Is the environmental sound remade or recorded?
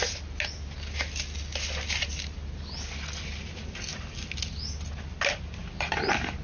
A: recorded